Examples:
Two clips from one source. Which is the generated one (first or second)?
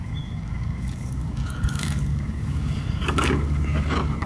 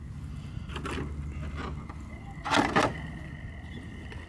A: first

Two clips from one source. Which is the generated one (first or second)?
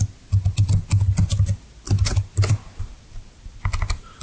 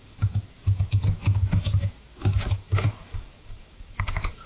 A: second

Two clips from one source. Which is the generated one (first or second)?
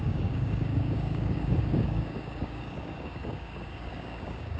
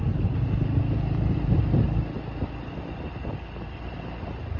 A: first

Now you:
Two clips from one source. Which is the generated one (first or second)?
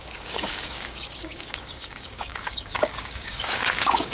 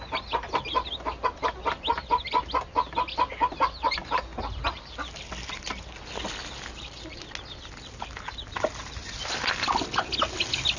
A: first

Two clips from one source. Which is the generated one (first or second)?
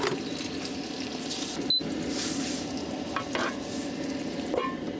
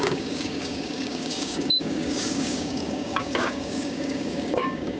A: second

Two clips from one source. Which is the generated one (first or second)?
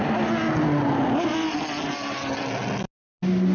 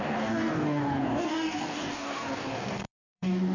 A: second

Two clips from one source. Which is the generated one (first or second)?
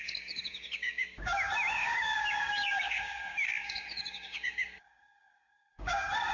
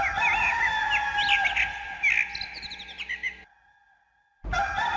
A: first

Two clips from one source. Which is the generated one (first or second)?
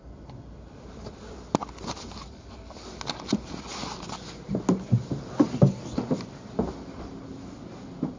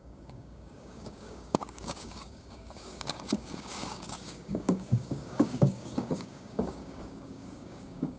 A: second